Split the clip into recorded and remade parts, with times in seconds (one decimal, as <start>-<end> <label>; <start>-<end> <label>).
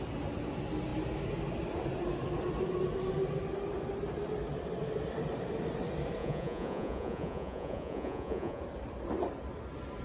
0.0-6.2 recorded; 6.2-8.6 remade; 8.6-10.0 recorded